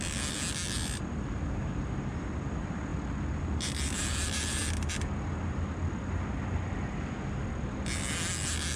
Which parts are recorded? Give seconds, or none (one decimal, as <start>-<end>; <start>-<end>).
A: 0.0-2.9; 4.9-8.8

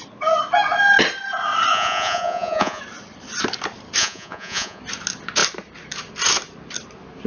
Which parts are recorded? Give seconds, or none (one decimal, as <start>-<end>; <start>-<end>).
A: 0.0-1.7; 2.8-4.0; 4.8-7.3

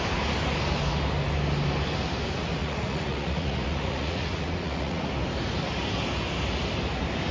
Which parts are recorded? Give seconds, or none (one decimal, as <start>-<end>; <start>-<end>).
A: 0.0-2.6; 5.1-7.3

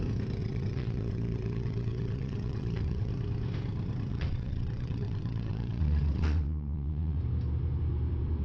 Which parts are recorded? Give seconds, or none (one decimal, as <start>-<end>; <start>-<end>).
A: 0.0-0.4; 3.1-4.1; 7.2-8.4